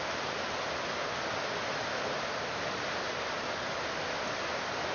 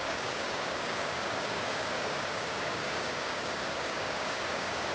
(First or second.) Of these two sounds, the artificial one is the second